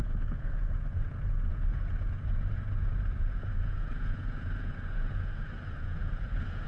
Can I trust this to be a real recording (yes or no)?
no